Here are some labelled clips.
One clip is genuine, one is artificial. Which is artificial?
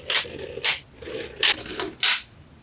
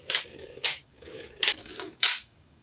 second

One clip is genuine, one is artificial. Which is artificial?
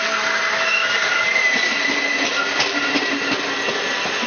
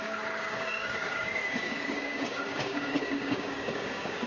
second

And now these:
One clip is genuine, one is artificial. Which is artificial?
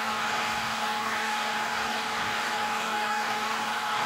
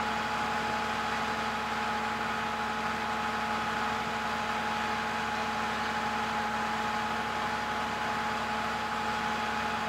first